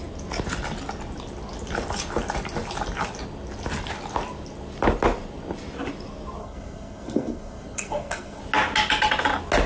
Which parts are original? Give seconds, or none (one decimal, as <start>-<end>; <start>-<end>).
0.0-6.4; 8.4-9.7